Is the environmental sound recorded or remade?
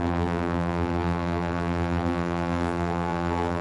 remade